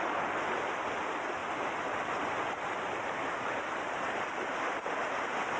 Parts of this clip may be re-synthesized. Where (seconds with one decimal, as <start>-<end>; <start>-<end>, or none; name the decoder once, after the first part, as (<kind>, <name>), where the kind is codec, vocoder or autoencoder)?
1.4-3.6 (vocoder, BigVGAN v2)